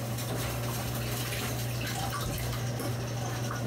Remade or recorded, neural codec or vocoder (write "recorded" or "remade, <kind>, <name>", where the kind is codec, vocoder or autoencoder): recorded